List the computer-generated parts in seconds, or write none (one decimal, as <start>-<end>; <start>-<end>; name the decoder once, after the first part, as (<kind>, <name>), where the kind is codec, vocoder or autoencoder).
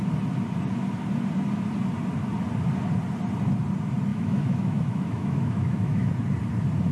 4.1-6.1 (autoencoder, DAC-VAE)